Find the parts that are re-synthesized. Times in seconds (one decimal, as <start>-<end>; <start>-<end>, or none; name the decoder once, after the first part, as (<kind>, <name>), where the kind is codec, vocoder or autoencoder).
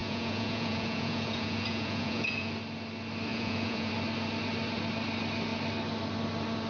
0.0-2.5 (vocoder, Vocos); 3.3-3.9